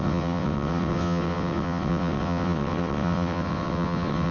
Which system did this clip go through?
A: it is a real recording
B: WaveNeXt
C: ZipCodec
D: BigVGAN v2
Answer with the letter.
B